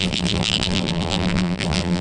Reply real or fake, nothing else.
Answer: fake